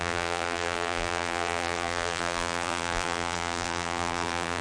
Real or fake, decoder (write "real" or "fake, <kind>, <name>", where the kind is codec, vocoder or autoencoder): fake, vocoder, BigVGAN v2